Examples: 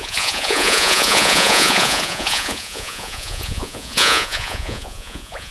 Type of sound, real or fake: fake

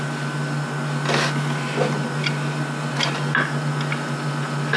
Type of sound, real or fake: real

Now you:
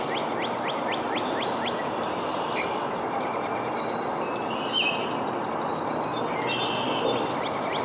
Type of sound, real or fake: real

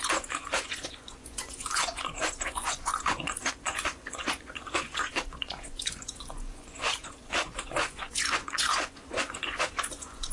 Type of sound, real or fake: fake